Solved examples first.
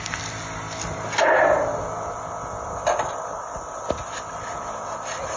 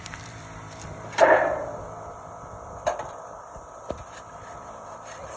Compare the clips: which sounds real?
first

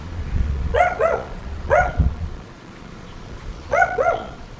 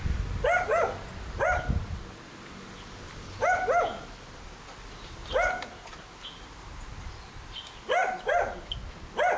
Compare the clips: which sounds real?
second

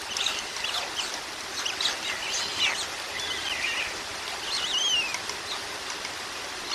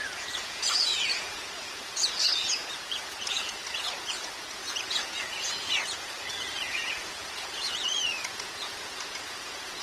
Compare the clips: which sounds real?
first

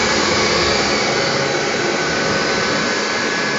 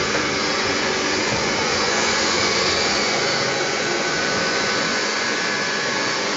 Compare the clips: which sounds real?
first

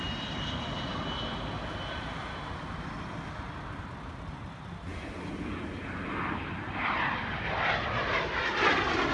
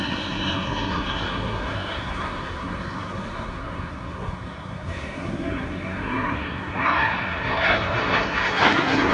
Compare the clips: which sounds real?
first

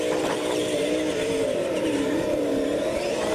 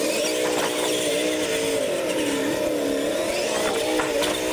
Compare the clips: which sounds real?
second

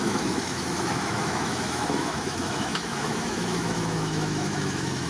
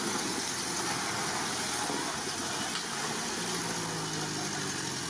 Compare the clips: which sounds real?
second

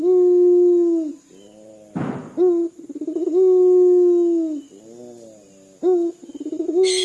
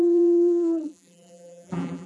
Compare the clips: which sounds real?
first